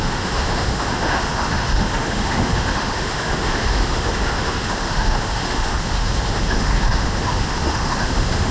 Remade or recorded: remade